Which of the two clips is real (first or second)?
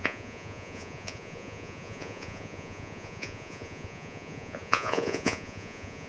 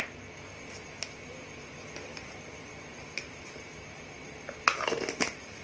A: second